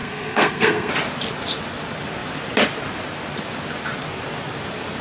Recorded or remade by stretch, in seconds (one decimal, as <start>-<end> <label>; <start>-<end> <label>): 0.0-0.9 remade; 0.9-5.0 recorded